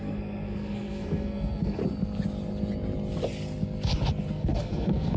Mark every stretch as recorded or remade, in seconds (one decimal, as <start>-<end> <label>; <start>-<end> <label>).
0.0-1.8 remade; 1.8-4.3 recorded; 4.3-5.2 remade